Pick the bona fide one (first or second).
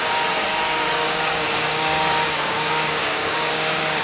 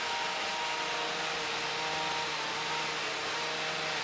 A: second